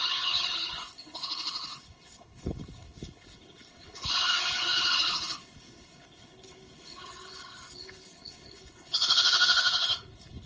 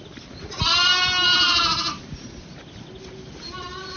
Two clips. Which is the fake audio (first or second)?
first